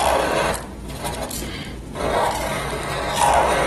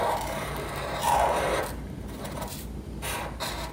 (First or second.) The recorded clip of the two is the first